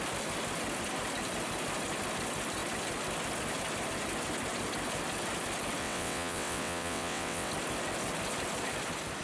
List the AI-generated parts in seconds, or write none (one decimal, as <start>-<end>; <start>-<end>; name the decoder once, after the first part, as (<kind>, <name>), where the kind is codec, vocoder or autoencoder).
5.8-7.5 (vocoder, WaveNeXt)